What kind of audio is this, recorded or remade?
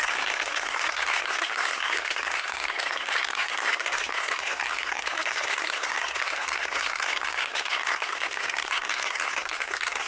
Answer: remade